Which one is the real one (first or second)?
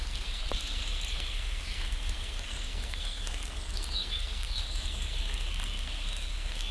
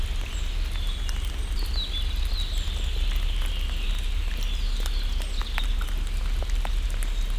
second